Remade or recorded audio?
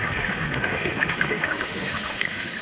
remade